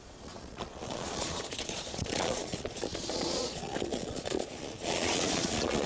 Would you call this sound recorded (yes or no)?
no